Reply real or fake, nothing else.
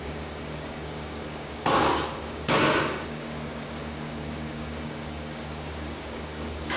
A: fake